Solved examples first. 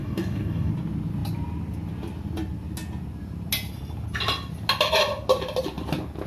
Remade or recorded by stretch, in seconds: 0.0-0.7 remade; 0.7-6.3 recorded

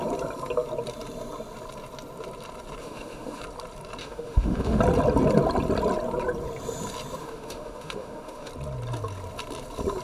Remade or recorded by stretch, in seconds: 0.0-2.8 recorded; 2.8-3.4 remade; 3.4-4.0 recorded; 4.0-4.8 remade; 4.8-7.2 recorded; 7.2-8.5 remade; 8.5-10.0 recorded

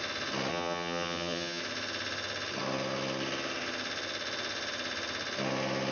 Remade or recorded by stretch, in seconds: 0.0-0.5 recorded; 0.5-1.6 remade; 1.6-5.9 recorded

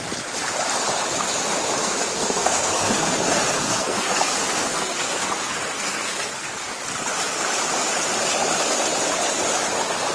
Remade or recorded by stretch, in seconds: 0.0-1.8 recorded; 1.8-6.7 remade; 6.7-10.1 recorded